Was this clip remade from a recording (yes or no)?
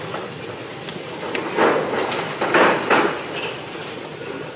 no